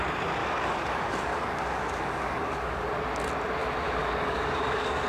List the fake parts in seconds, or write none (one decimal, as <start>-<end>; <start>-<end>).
0.4-2.9; 4.0-5.1

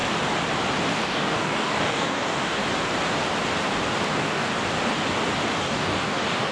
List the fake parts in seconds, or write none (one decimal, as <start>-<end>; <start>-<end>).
0.9-2.6; 4.1-4.5; 5.6-6.5

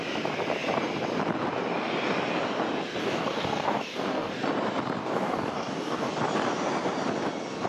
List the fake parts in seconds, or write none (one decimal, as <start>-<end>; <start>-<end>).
3.0-4.3; 5.0-6.1

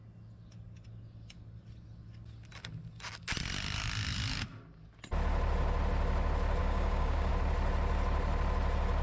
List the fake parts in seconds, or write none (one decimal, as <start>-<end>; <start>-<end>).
6.6-7.3

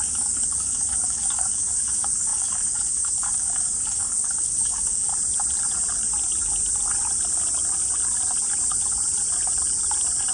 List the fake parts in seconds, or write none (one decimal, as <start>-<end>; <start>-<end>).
0.0-5.1